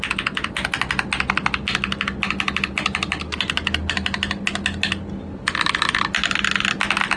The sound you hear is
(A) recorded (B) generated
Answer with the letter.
A